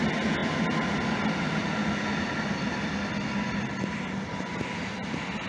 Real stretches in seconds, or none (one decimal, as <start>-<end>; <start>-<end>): 0.0-5.5